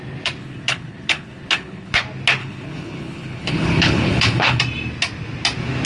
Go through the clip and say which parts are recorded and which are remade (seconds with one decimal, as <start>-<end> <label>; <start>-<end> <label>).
0.0-0.4 recorded; 0.4-2.0 remade; 2.0-2.4 recorded; 2.4-4.6 remade; 4.6-5.8 recorded